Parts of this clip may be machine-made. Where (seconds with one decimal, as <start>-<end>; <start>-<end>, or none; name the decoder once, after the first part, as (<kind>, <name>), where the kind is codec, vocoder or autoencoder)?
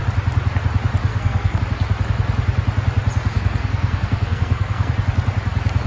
1.1-1.6 (codec, SNAC); 3.3-4.9